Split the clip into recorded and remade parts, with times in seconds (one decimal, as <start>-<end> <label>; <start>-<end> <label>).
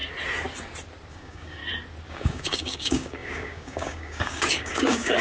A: 0.0-1.1 recorded; 1.1-1.6 remade; 1.6-2.1 recorded; 2.1-5.2 remade